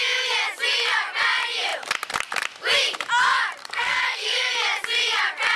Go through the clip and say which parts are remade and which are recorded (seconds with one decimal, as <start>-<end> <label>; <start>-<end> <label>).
0.0-3.6 recorded; 3.6-4.5 remade; 4.5-5.6 recorded